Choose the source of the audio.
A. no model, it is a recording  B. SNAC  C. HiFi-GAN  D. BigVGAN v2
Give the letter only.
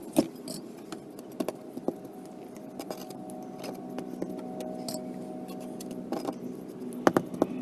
A